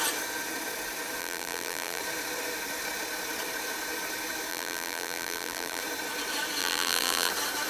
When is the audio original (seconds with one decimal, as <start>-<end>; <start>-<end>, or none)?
0.0-1.2; 2.0-4.5; 5.8-6.6; 7.3-7.7